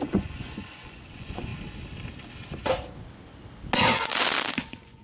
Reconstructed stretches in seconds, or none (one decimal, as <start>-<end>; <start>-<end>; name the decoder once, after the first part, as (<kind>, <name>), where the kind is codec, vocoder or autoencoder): 0.0-1.5 (vocoder, Vocos); 4.5-5.0